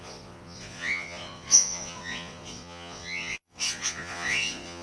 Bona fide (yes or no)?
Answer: no